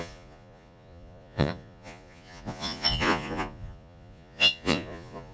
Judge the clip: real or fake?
fake